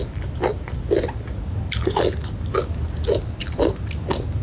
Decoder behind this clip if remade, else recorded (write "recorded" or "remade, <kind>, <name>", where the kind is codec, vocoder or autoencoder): recorded